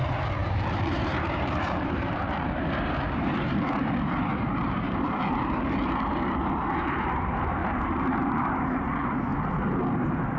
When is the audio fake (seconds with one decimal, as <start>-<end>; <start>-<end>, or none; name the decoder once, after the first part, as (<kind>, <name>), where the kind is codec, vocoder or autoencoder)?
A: 0.0-9.3 (vocoder, BigVGAN v2)